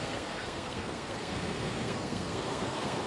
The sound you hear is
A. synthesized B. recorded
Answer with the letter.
A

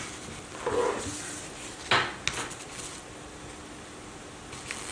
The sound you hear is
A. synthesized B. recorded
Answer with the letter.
B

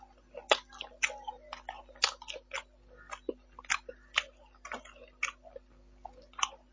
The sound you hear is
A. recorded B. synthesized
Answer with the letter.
A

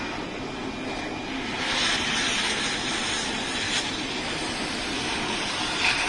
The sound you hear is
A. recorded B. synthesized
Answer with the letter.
A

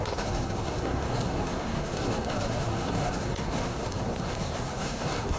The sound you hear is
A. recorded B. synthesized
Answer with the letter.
B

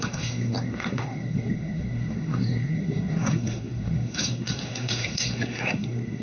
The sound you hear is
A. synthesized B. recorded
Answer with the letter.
A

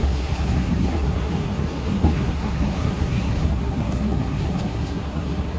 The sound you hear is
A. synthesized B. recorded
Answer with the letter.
A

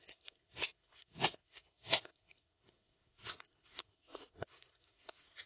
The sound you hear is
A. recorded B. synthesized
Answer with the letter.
B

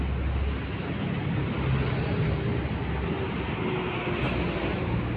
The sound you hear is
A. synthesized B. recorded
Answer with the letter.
B